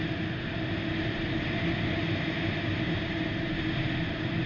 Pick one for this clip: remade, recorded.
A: recorded